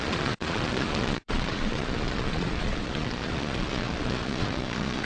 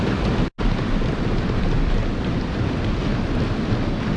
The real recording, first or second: second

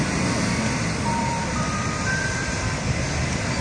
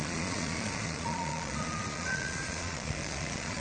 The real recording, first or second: first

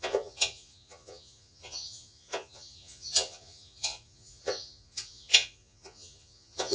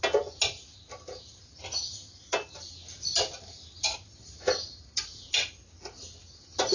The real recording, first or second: second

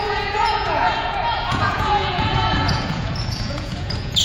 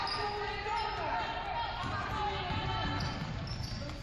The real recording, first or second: second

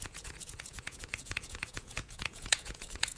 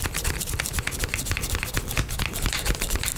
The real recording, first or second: second